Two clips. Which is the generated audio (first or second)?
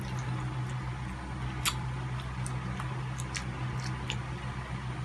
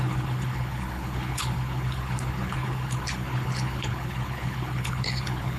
second